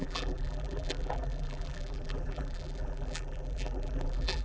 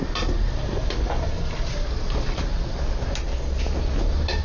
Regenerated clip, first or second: first